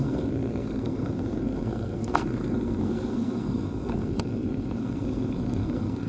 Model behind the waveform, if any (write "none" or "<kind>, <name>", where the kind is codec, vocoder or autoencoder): codec, SNAC